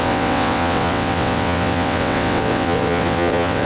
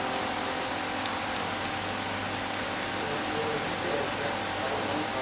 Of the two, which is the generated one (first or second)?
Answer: first